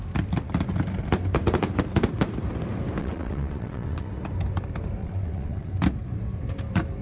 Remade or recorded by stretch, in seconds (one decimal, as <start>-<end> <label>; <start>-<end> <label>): 0.0-3.0 recorded; 3.0-4.1 remade; 4.1-5.0 recorded; 5.0-5.7 remade; 5.7-7.0 recorded